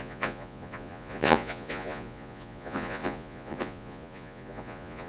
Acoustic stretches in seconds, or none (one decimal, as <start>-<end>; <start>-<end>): none